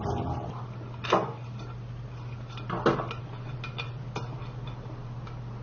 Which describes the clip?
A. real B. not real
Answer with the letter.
A